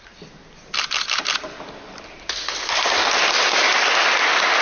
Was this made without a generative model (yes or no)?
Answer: yes